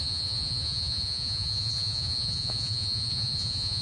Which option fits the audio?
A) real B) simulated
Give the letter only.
B